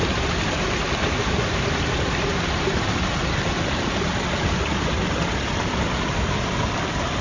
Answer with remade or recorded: recorded